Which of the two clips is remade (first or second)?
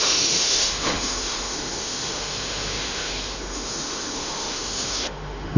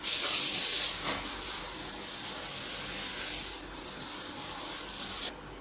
first